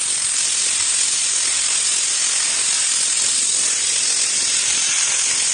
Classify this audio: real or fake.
real